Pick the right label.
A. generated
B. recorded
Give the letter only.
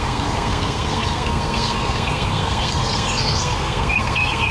A